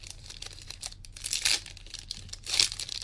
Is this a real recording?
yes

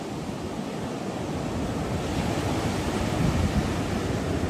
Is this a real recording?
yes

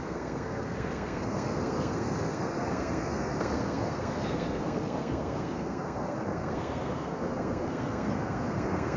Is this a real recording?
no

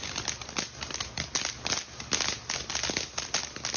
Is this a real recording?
yes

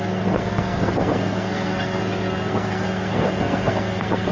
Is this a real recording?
no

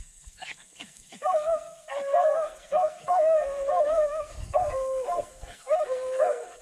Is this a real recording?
no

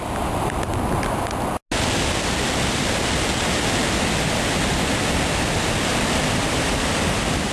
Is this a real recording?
yes